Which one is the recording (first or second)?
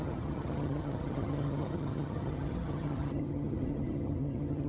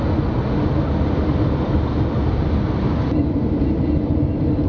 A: second